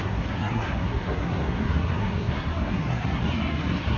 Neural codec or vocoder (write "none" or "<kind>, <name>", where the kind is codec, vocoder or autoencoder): codec, SNAC